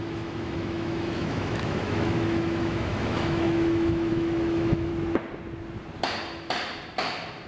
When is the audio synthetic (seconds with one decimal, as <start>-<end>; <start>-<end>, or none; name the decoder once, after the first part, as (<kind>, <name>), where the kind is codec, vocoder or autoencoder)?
0.0-4.9 (autoencoder, DAC-VAE)